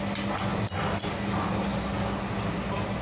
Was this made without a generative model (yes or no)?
yes